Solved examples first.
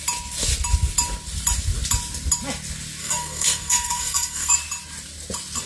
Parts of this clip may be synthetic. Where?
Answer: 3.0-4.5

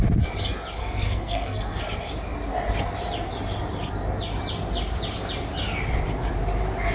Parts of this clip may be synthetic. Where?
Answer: 0.8-1.8